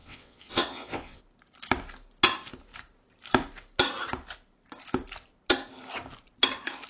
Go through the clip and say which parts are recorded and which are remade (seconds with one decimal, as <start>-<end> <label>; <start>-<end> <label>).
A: 0.0-1.2 remade; 1.2-6.9 recorded